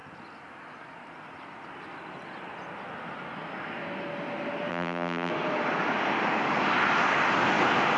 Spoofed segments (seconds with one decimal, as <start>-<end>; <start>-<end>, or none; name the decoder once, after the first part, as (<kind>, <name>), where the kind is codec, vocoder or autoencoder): 4.7-5.3 (vocoder, BigVGAN v2)